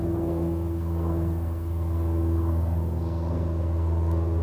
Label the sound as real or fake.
fake